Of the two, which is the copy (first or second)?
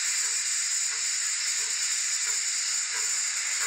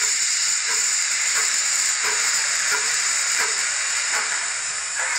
second